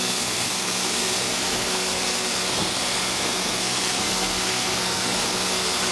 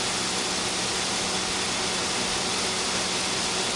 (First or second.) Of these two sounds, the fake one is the first